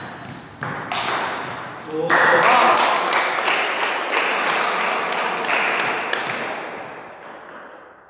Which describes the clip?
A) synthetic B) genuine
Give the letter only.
B